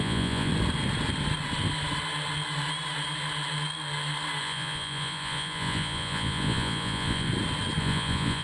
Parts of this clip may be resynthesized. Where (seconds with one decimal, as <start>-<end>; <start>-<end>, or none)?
0.0-0.5; 4.4-7.3; 7.8-8.4